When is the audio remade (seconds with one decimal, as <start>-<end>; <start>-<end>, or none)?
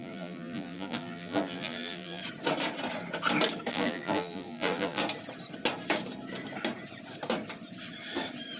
0.0-2.2; 3.7-5.0